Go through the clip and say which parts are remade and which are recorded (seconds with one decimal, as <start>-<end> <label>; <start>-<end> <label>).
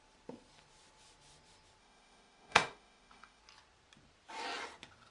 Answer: 0.0-1.8 recorded; 1.8-3.4 remade; 3.4-5.1 recorded